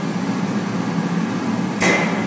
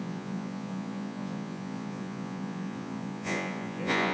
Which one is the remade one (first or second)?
second